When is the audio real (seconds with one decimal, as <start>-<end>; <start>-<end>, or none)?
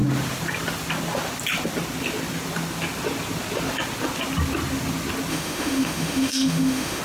0.0-5.3